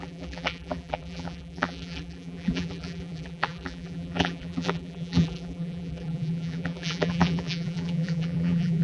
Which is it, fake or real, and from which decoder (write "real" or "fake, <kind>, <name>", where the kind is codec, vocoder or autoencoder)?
fake, vocoder, BigVGAN v2